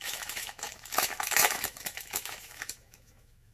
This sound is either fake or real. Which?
fake